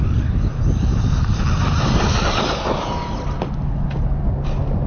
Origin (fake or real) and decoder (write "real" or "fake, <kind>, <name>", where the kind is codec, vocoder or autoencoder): real